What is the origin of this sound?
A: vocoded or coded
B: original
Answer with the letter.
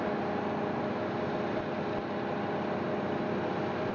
B